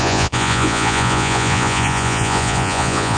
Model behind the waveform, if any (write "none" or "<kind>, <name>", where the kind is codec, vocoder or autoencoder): vocoder, Vocos